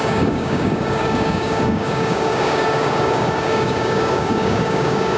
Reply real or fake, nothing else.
fake